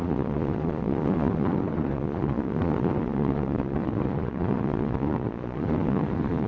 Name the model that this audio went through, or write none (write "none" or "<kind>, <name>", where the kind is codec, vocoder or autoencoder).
vocoder, Vocos